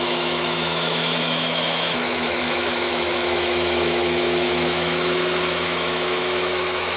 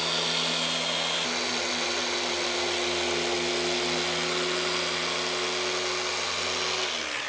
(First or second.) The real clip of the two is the second